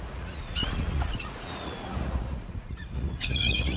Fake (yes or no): yes